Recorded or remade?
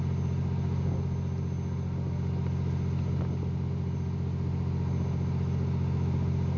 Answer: recorded